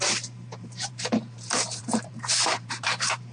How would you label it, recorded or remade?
remade